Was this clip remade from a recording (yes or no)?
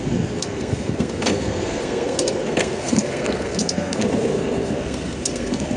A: yes